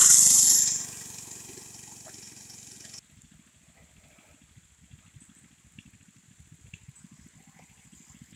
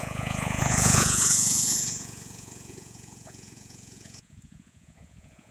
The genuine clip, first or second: first